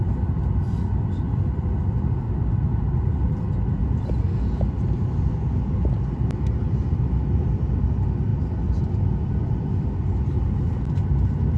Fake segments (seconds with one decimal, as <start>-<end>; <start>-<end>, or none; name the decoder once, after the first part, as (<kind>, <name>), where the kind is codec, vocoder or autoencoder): none